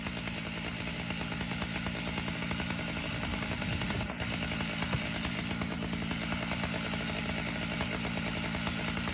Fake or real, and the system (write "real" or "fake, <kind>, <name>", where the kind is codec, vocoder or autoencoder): real